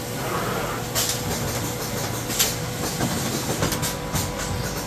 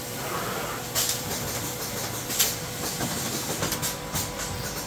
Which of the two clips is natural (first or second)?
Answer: first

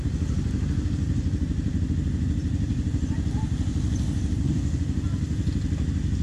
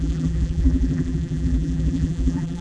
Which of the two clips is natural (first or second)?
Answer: first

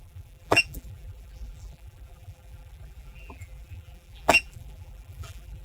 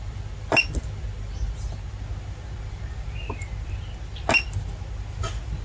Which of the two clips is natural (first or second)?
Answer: second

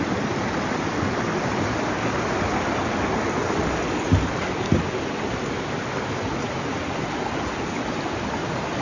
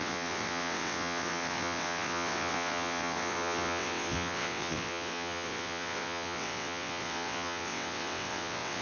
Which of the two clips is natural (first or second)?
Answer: first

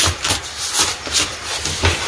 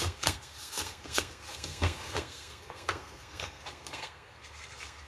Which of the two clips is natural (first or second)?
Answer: first